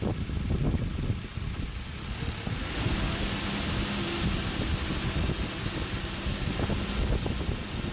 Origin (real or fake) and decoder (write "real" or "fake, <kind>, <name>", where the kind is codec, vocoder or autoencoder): real